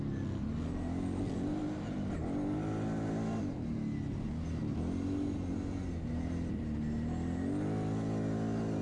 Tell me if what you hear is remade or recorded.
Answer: recorded